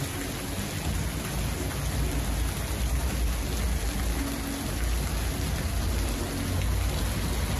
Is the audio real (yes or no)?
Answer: yes